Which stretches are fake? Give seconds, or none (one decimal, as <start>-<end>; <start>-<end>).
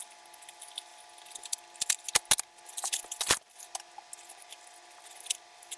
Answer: none